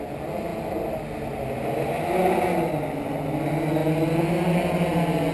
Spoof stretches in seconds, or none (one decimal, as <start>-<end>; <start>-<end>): none